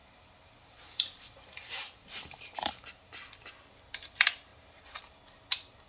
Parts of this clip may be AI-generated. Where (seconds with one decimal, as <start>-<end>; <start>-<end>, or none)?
0.0-3.5; 4.5-5.2